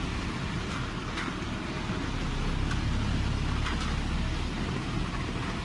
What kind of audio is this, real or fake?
real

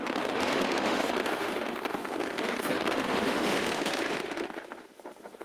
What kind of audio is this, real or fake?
fake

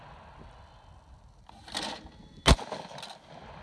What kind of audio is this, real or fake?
real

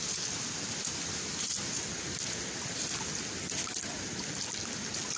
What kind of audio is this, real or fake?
real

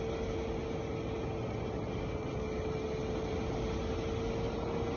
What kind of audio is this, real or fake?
real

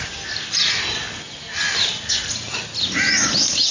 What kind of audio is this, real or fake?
real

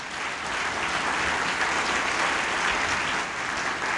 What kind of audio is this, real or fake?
real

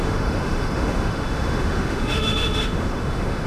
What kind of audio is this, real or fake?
fake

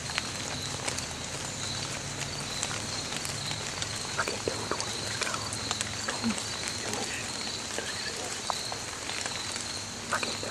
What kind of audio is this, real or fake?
real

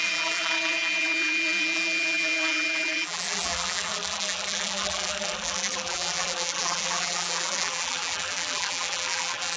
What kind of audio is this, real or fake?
fake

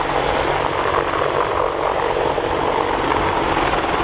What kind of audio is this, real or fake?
real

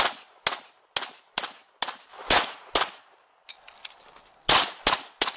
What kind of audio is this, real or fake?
real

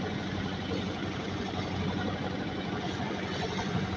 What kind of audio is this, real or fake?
fake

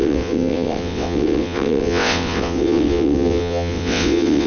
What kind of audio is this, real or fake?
fake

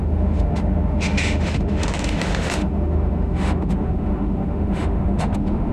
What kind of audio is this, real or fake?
fake